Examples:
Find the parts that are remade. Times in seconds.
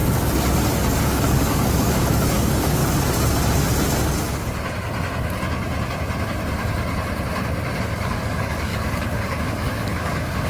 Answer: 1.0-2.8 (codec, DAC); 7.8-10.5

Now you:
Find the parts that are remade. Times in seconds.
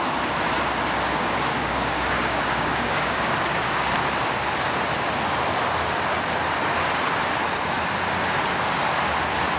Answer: 1.2-3.9 (codec, DAC)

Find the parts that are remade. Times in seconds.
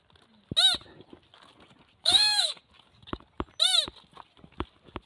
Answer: 2.0-2.6 (codec, DAC)